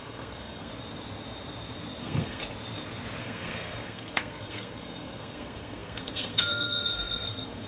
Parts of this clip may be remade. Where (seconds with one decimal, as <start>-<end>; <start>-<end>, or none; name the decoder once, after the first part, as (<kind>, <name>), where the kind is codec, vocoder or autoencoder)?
0.0-0.7 (codec, SNAC); 2.0-2.4; 3.2-7.7